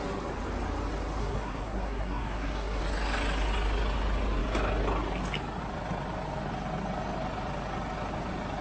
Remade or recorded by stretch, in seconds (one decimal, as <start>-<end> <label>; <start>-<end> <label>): 0.0-1.2 recorded; 1.2-2.8 remade; 2.8-8.6 recorded